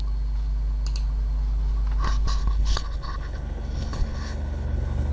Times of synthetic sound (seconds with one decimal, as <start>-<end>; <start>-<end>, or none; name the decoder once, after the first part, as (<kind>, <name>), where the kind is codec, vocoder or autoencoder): 2.4-5.1 (codec, HILCodec)